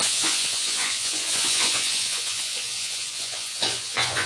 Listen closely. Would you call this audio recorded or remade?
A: remade